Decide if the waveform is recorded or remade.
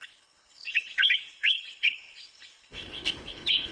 remade